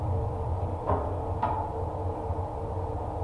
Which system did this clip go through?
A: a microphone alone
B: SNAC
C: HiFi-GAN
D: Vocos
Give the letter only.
A